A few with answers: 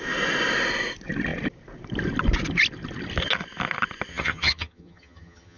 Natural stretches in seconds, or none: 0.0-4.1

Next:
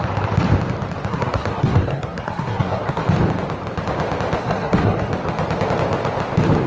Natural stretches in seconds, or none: 0.0-1.1; 3.0-4.4; 5.1-6.7

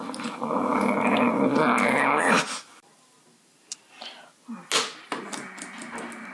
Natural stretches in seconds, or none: 0.0-6.3